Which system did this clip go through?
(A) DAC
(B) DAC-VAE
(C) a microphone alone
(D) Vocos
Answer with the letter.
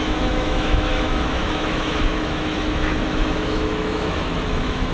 B